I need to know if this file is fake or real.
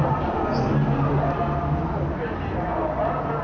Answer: real